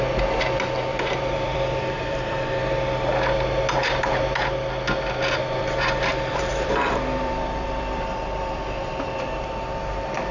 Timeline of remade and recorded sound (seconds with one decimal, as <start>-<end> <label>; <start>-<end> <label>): 0.0-0.9 recorded; 0.9-2.4 remade; 2.4-6.1 recorded; 6.1-8.6 remade; 8.6-10.3 recorded